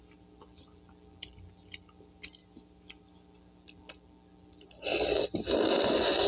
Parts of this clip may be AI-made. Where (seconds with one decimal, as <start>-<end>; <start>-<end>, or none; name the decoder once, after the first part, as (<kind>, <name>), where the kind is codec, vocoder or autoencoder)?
none